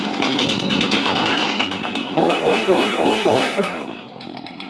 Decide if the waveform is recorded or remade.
remade